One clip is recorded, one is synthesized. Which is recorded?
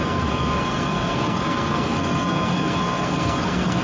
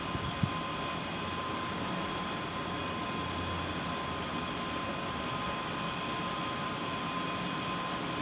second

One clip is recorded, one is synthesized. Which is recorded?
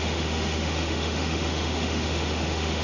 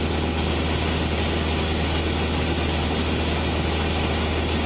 second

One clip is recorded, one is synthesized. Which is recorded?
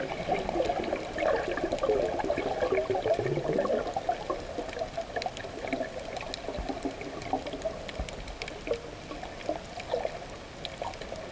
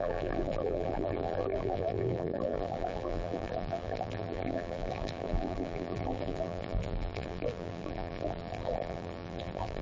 first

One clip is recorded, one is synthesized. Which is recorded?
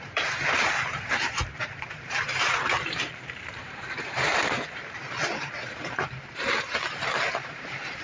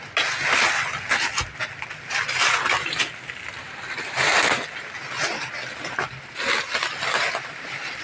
second